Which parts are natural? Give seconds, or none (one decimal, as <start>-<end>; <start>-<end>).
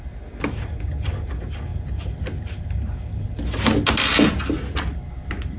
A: 0.0-5.6